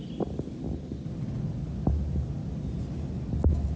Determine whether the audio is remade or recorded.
recorded